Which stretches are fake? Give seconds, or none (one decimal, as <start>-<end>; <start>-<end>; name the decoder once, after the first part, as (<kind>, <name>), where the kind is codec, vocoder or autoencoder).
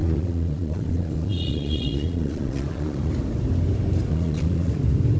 0.0-3.1 (vocoder, Vocos); 4.1-4.7